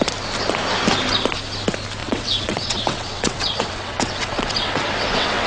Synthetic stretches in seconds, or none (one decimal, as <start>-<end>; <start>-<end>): 2.0-5.5